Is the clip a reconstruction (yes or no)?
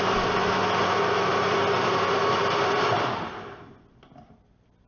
no